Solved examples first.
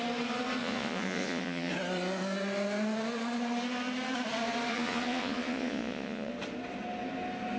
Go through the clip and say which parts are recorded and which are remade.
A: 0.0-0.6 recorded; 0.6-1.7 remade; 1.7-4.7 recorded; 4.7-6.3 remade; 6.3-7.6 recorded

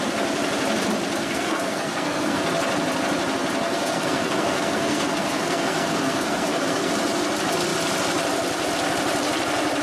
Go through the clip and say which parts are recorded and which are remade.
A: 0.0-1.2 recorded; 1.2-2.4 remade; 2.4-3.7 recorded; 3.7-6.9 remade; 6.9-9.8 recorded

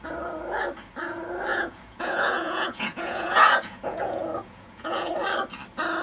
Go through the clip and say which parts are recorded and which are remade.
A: 0.0-1.5 recorded; 1.5-5.1 remade; 5.1-6.0 recorded

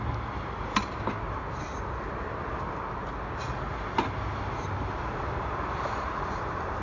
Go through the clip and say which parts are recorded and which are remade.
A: 0.0-6.8 recorded

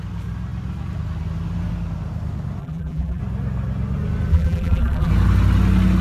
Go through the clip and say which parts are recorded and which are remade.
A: 0.0-2.6 recorded; 2.6-3.2 remade; 3.2-4.3 recorded; 4.3-5.1 remade; 5.1-6.0 recorded

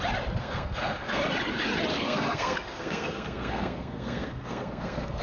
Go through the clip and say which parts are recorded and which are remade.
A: 0.0-0.4 recorded; 0.4-1.2 remade; 1.2-1.9 recorded; 1.9-5.2 remade